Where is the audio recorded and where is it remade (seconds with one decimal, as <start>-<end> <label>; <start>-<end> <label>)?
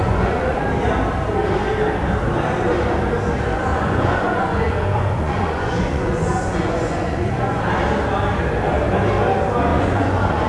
0.0-0.6 remade; 0.6-3.7 recorded; 3.7-7.6 remade; 7.6-9.7 recorded; 9.7-10.5 remade